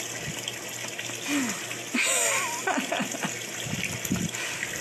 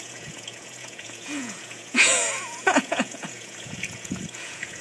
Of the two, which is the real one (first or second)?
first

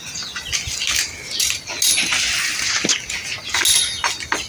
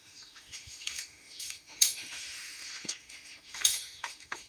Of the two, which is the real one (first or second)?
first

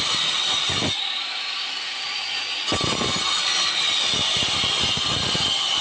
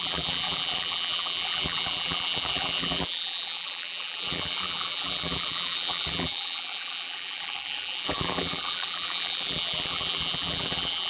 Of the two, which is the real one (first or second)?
first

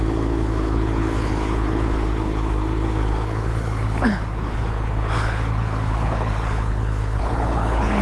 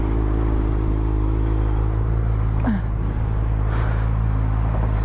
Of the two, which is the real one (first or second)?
second